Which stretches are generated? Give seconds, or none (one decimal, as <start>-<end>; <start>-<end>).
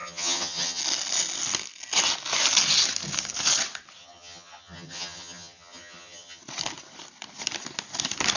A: 0.0-0.8; 4.0-6.4